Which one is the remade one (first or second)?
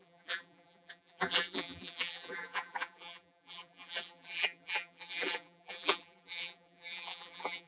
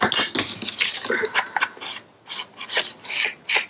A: first